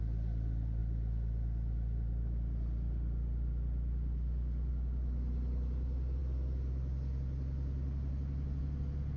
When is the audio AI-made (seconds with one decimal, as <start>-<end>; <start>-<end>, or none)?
none